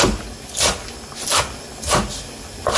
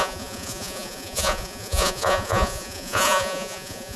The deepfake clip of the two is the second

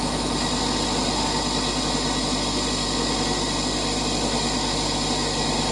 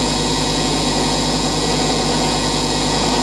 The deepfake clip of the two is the second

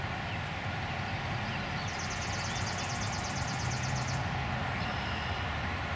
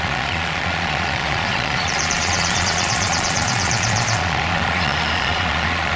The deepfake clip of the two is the second